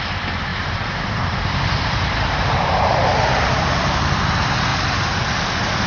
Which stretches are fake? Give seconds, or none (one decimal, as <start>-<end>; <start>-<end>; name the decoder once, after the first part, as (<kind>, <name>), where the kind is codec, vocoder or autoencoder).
0.5-4.0 (vocoder, BigVGAN v2); 4.7-5.2